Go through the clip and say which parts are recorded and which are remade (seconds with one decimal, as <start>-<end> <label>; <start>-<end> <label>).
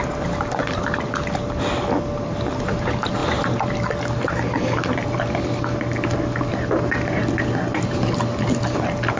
0.0-9.2 recorded